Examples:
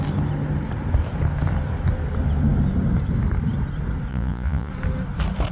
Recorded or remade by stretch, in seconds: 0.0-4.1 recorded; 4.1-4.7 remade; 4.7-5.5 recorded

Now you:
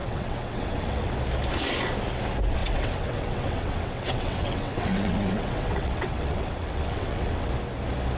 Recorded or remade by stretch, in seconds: 0.0-1.1 remade; 1.1-2.6 recorded; 2.6-7.5 remade; 7.5-8.2 recorded